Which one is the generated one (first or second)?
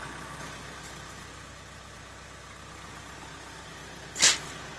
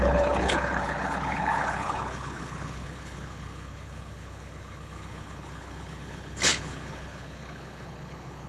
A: second